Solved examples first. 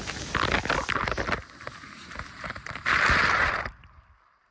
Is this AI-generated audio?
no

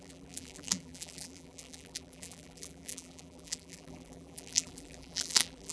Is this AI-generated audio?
yes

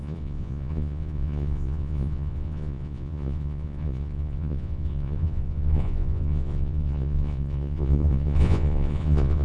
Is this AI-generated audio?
yes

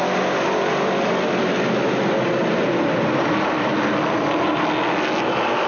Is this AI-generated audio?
no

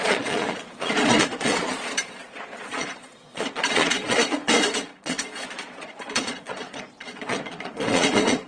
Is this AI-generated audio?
yes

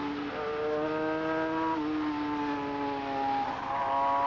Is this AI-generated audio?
no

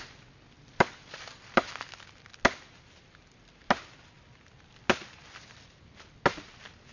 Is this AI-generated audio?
no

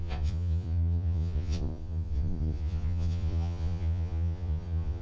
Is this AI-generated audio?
yes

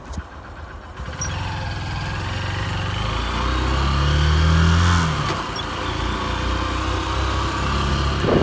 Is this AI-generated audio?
no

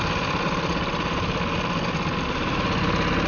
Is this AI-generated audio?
no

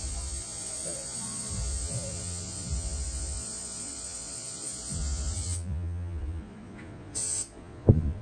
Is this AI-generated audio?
yes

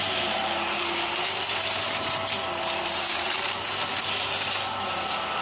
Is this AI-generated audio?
no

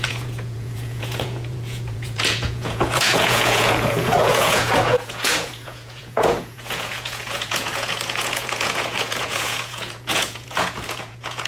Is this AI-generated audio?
yes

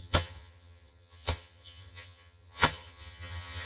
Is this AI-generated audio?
yes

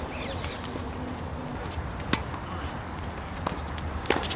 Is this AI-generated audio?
no